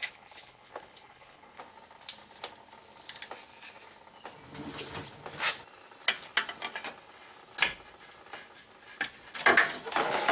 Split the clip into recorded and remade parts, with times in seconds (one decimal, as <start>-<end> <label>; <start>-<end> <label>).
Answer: 0.0-1.6 remade; 1.6-10.3 recorded